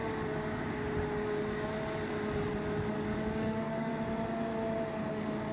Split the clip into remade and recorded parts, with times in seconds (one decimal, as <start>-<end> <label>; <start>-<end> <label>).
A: 0.0-2.5 recorded; 2.5-3.9 remade; 3.9-5.1 recorded; 5.1-5.5 remade